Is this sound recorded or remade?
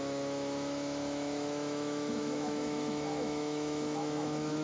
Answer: remade